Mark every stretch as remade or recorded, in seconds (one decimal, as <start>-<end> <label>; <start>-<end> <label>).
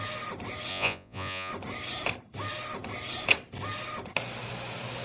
0.0-0.7 recorded; 0.7-1.5 remade; 1.5-5.0 recorded